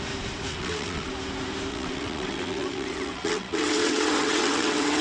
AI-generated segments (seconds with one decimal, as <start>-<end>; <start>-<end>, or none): 0.5-1.1; 1.7-5.0